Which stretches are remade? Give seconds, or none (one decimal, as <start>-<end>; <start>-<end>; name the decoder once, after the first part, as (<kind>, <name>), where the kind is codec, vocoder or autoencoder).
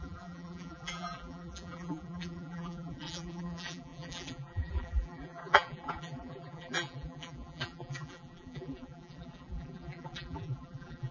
0.0-11.1 (vocoder, BigVGAN v2)